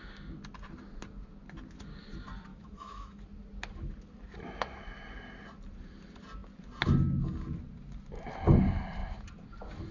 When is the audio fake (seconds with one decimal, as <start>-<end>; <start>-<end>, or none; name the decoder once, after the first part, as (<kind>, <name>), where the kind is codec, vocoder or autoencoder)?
2.5-3.2 (autoencoder, DAC-VAE)